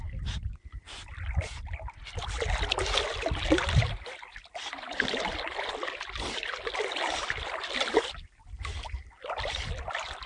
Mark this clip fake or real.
real